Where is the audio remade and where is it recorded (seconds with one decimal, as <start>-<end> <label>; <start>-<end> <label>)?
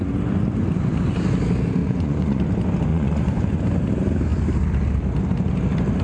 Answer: 0.0-1.8 recorded; 1.8-2.4 remade; 2.4-2.9 recorded; 2.9-3.6 remade; 3.6-6.0 recorded